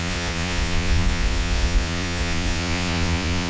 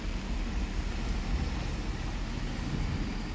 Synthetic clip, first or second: first